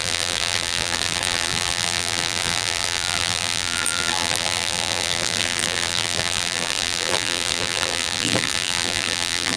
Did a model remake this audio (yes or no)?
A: yes